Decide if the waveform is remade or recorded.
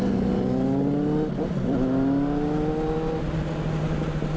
recorded